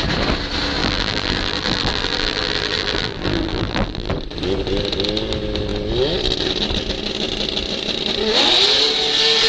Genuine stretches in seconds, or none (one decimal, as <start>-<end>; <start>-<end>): 0.0-0.8; 4.1-9.5